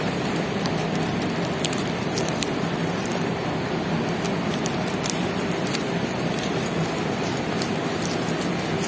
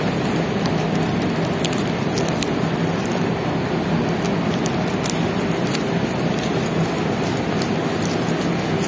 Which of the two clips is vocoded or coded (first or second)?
first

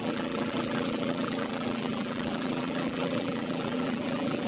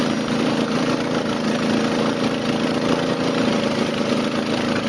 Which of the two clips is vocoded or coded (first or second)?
first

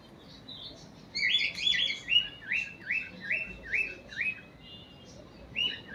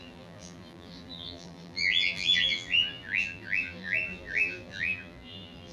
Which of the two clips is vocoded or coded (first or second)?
second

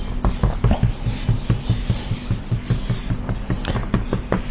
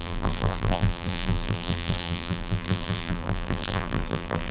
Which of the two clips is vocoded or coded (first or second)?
second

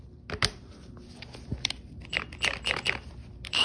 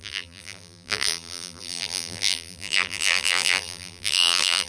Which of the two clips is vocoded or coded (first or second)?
second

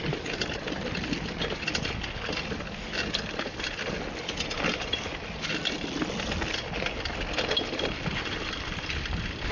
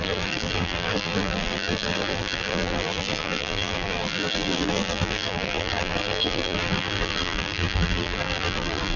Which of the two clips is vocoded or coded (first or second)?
second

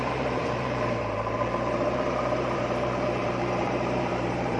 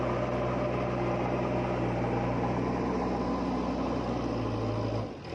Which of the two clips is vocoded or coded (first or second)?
first